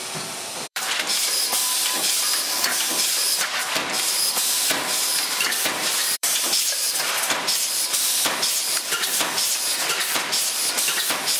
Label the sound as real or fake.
fake